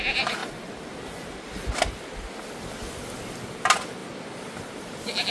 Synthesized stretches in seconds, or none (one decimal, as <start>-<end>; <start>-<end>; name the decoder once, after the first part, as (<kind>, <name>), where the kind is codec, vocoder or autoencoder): none